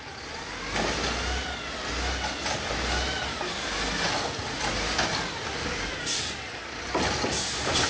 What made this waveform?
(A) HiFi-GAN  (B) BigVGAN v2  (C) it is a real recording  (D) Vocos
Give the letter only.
C